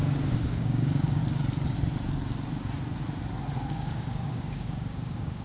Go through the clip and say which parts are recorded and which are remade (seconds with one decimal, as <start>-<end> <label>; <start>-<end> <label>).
0.0-1.2 remade; 1.2-3.7 recorded; 3.7-5.4 remade